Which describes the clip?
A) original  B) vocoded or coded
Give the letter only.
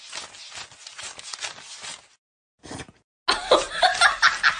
A